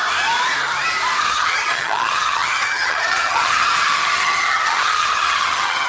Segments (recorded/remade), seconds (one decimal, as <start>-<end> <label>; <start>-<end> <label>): 0.0-1.2 recorded; 1.2-5.9 remade